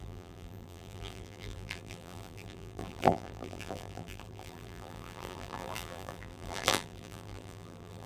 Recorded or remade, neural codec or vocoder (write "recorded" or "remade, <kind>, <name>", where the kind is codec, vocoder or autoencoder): remade, vocoder, BigVGAN v2